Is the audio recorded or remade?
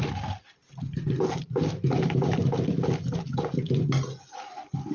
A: recorded